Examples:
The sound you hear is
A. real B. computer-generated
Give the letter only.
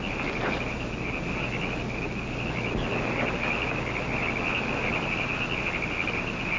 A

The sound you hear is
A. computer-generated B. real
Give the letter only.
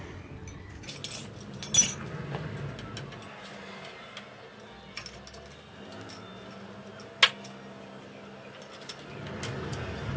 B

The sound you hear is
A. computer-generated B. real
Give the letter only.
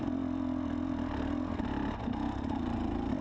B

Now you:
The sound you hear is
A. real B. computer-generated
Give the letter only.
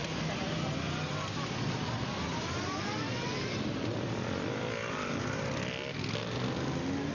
A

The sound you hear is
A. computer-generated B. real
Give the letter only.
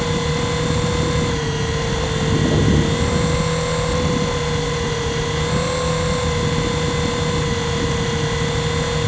B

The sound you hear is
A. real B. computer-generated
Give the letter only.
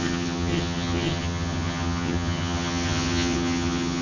B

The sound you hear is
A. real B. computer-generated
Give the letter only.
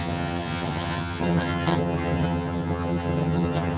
B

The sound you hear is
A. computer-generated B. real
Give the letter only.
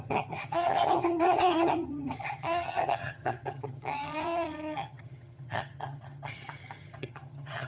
A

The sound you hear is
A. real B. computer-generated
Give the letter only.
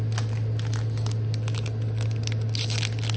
A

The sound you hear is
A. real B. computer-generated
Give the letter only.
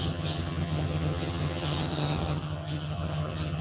B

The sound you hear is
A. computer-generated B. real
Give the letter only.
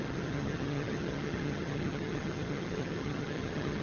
A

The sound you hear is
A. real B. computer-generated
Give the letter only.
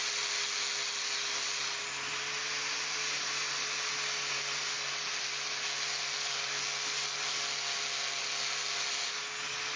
A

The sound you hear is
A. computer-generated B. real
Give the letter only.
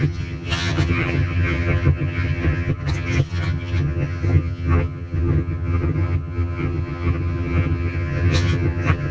A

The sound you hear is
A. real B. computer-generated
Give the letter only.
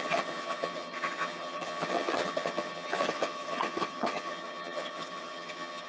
B